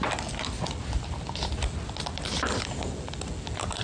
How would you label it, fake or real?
real